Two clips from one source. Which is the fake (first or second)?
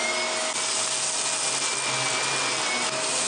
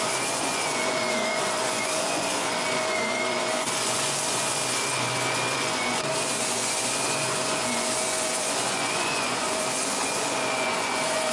second